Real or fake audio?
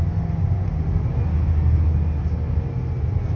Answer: real